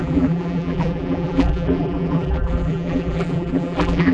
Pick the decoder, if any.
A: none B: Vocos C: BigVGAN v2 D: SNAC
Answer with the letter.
C